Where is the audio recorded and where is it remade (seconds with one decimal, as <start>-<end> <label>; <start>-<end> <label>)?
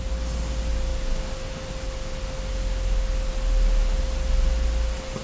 0.0-5.2 recorded